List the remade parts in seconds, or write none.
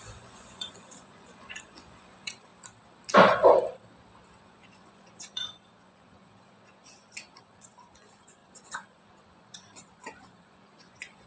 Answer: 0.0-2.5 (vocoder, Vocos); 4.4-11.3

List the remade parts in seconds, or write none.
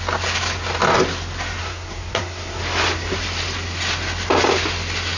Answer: 1.6-2.6 (codec, SNAC)